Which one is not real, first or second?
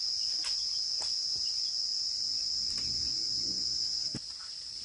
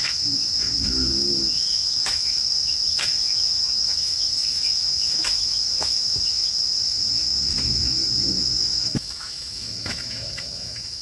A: second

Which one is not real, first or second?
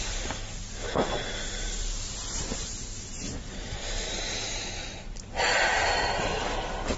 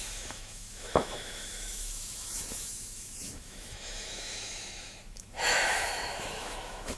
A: second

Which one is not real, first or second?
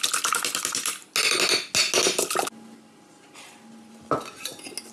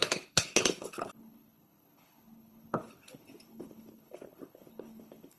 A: second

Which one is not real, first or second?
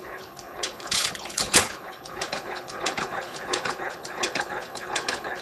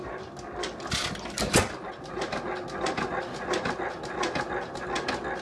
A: first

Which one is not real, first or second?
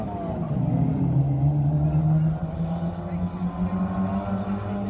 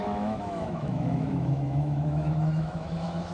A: second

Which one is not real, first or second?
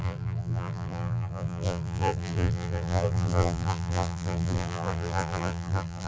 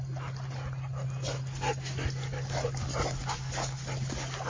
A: first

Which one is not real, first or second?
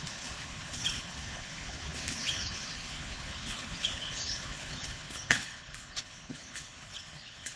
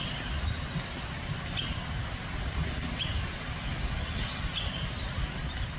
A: first